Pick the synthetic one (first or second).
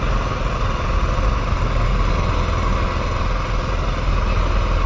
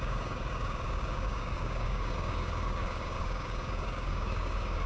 second